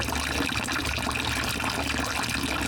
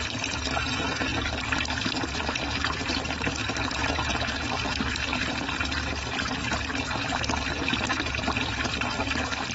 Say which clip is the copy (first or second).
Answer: second